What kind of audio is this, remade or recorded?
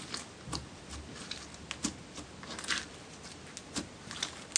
recorded